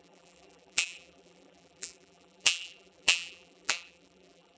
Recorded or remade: remade